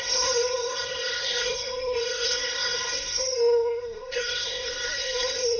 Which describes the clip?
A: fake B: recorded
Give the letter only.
A